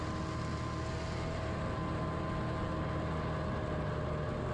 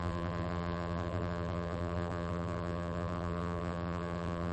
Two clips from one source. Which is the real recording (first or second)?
first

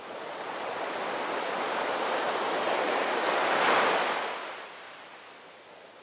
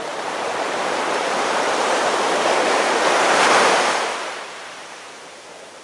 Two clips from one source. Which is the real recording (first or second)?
first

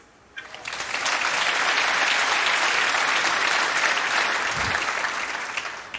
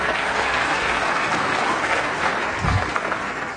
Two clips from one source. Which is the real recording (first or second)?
first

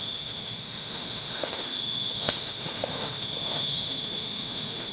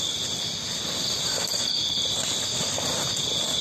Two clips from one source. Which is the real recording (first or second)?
second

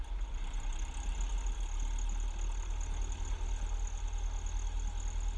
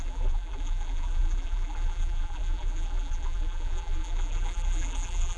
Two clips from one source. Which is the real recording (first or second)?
first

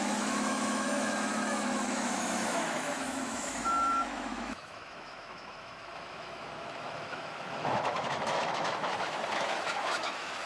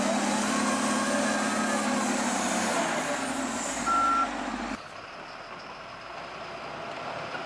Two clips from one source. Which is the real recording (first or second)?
second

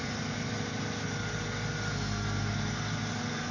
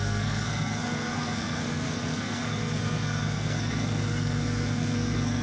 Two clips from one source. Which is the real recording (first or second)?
first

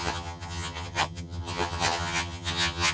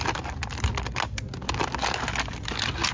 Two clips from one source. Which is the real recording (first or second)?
second